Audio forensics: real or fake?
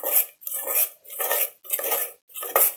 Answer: real